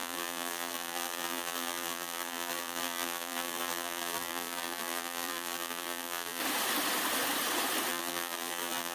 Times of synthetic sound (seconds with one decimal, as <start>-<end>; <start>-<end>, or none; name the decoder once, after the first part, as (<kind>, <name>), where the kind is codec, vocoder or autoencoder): 0.0-6.4 (vocoder, BigVGAN v2); 7.9-8.9